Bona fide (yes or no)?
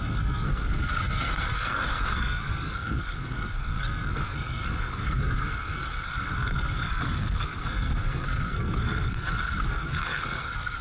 no